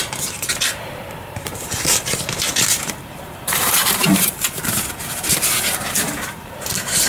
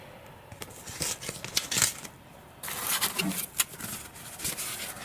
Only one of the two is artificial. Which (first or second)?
first